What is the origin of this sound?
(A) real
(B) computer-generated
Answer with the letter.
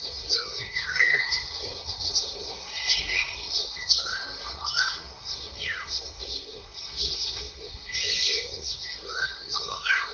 B